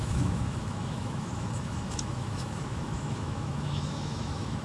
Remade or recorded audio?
remade